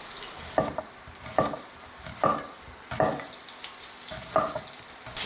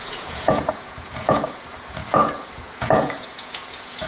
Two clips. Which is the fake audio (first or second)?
second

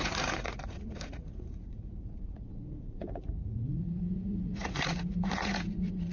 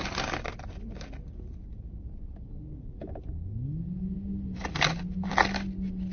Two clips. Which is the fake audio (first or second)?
first